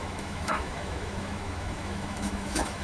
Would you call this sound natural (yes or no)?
no